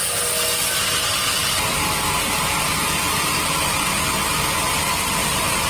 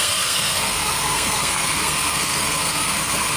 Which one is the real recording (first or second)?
first